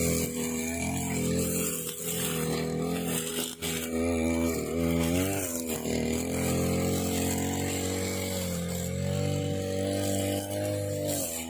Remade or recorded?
recorded